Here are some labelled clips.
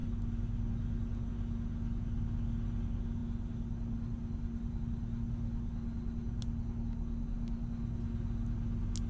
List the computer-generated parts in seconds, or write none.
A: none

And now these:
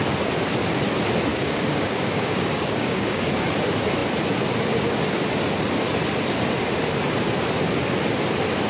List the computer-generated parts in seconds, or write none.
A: 1.3-3.2 (codec, DAC)